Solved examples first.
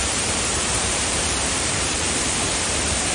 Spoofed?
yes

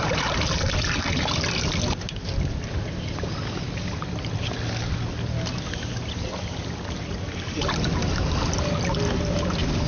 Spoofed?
no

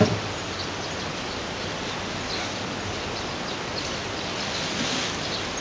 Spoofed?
no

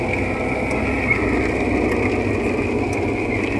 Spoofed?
no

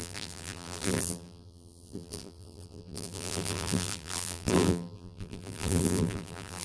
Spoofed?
yes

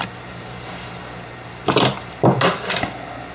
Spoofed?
no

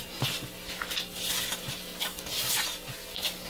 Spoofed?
no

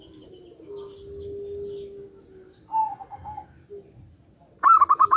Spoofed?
no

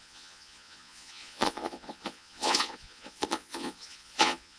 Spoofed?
yes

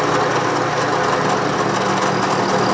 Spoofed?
no